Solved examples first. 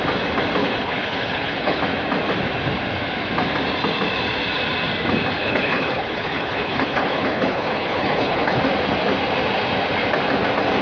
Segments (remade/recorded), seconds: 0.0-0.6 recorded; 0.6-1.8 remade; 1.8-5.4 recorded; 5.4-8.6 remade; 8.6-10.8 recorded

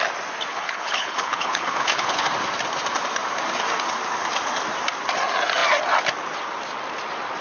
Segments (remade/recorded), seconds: 0.0-0.5 recorded; 0.5-2.2 remade; 2.2-7.4 recorded